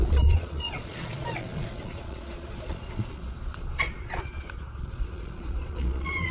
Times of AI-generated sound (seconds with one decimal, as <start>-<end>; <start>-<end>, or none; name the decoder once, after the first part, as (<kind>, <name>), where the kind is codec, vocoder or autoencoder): 0.0-6.3 (vocoder, Vocos)